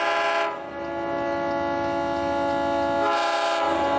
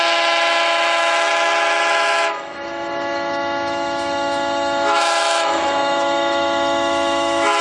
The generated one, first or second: second